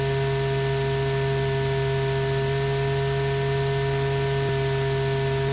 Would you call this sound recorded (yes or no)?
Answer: yes